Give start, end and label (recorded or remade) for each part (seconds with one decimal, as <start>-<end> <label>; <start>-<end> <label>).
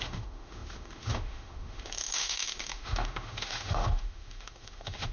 0.0-5.1 remade